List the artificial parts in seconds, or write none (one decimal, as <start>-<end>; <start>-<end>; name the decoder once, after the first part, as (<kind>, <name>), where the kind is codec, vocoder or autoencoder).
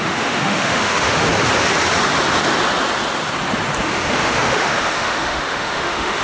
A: 0.0-1.3 (autoencoder, DAC-VAE); 3.8-6.2